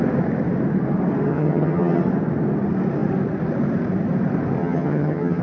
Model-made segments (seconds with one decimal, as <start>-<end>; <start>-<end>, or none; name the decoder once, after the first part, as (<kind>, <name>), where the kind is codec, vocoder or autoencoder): 1.3-2.0 (vocoder, HiFi-GAN); 4.6-5.4